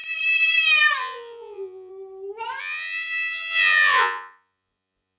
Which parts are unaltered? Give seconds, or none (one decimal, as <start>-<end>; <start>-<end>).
0.0-1.0; 1.9-2.6

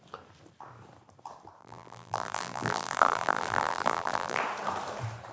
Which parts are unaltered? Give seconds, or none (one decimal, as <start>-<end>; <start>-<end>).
0.0-1.6; 4.4-5.3

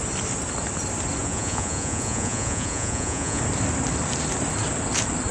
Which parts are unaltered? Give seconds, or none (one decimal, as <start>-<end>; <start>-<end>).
0.0-1.2; 3.4-5.3

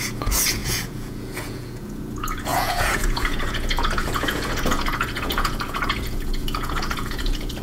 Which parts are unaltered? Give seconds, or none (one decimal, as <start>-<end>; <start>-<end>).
none

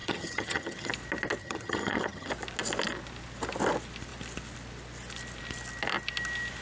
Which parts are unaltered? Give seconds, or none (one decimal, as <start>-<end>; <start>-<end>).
0.9-1.4; 2.3-6.6

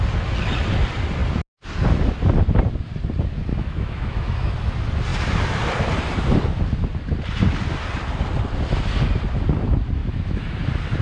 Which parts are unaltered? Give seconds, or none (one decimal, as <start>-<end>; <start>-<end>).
0.0-3.5; 4.5-10.0; 10.6-11.0